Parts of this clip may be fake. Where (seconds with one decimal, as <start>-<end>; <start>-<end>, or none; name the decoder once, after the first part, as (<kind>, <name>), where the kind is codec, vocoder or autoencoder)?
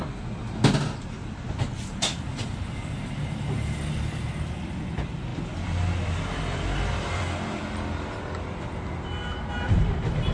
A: 5.3-7.6 (vocoder, BigVGAN v2)